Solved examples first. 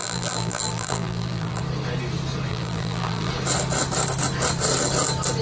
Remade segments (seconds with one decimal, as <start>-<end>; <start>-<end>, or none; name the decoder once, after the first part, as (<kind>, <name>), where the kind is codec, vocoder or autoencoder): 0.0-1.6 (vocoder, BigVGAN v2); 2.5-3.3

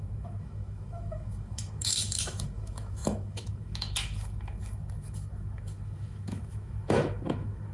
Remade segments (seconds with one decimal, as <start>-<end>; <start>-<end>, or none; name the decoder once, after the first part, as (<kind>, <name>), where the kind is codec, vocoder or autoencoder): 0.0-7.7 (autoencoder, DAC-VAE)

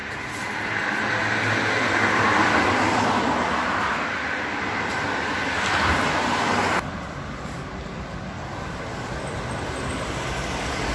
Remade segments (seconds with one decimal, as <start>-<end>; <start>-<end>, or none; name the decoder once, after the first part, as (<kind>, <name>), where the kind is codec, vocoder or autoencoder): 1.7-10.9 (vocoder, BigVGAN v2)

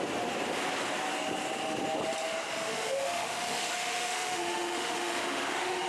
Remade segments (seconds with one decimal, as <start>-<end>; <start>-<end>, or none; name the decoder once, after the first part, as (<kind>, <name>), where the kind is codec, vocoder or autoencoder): 2.5-5.9 (autoencoder, DAC-VAE)

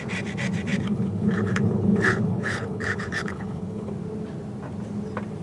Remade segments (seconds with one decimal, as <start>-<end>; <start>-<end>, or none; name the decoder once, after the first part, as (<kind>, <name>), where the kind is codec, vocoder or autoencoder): 0.7-3.9 (codec, HILCodec)

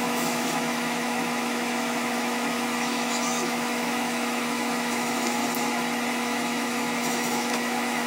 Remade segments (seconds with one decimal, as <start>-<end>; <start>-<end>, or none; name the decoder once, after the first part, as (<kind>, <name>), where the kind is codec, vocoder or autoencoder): 0.0-5.4 (autoencoder, DAC-VAE); 6.1-8.1